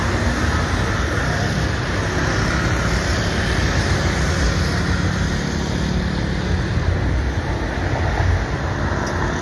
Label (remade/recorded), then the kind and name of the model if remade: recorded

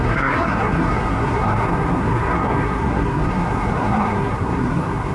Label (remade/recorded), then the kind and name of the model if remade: remade, codec, SNAC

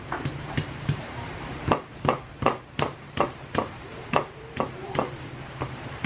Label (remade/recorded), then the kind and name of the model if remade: remade, vocoder, BigVGAN v2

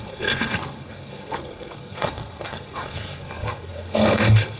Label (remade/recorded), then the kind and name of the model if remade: remade, codec, SNAC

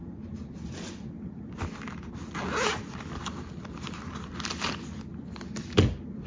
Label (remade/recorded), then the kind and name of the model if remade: recorded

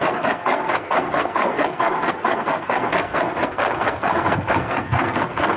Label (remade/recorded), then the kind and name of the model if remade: remade, codec, SNAC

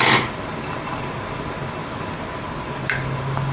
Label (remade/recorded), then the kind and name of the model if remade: recorded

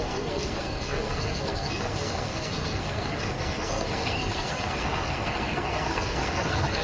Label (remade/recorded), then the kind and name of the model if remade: remade, codec, SNAC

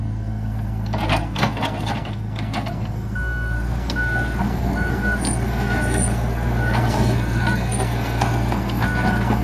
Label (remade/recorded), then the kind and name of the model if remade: remade, codec, SNAC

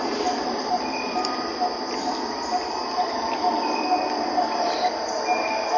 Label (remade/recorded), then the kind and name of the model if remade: recorded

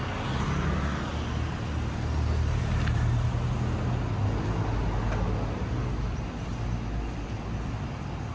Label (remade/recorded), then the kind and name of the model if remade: recorded